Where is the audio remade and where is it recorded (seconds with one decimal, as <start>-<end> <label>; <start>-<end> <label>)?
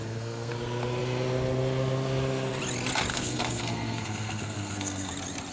0.0-0.5 remade; 0.5-3.1 recorded; 3.1-5.1 remade; 5.1-5.5 recorded